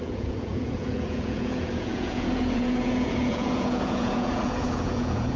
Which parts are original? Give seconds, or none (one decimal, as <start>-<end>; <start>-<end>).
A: none